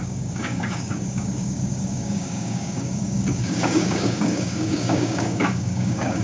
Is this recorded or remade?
remade